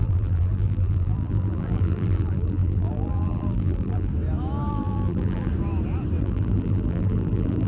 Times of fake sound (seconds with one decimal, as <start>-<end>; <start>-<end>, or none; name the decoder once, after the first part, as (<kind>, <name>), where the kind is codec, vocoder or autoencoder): 0.0-4.1 (vocoder, BigVGAN v2); 4.7-5.5; 6.2-7.7